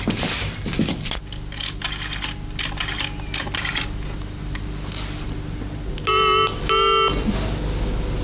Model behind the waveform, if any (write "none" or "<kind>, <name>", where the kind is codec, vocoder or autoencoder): none